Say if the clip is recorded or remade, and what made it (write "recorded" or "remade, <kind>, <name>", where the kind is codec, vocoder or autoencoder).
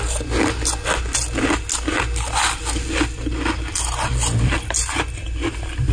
recorded